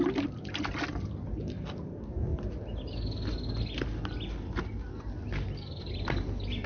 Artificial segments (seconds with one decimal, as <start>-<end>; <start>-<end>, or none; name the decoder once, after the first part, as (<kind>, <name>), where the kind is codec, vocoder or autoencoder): none

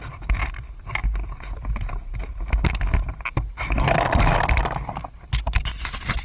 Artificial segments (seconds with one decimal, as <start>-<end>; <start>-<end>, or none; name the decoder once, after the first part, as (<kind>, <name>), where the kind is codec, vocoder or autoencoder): 3.1-3.9 (vocoder, BigVGAN v2)

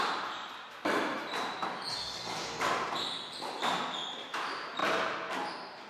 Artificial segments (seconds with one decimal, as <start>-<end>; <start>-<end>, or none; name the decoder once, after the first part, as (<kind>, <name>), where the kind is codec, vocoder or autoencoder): 0.0-1.6 (vocoder, BigVGAN v2); 3.6-4.8; 5.5-5.9

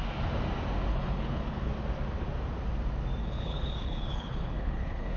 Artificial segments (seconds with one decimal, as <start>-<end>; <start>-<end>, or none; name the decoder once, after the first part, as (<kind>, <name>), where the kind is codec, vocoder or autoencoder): 0.9-1.7 (codec, HILCodec); 3.2-5.2

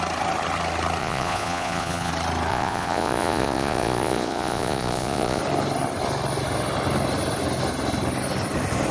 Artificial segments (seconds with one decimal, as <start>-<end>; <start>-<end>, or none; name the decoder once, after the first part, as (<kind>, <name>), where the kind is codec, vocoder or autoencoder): 1.0-2.1 (vocoder, Vocos); 2.5-5.4

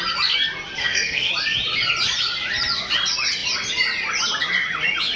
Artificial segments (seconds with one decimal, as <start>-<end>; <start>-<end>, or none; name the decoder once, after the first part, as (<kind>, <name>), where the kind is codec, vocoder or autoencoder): 0.8-1.3 (codec, SNAC)

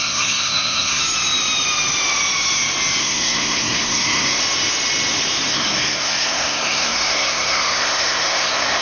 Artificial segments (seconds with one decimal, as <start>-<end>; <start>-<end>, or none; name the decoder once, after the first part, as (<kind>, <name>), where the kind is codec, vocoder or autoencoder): 0.0-1.0 (codec, SNAC); 3.0-4.4; 5.5-8.8

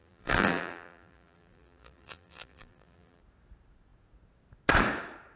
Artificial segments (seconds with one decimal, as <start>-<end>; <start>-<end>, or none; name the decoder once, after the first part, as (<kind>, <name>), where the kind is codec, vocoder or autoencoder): 0.0-3.2 (vocoder, BigVGAN v2)